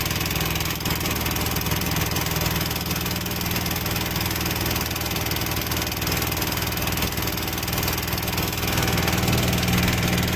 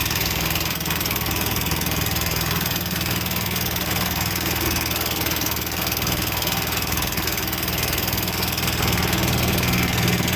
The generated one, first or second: second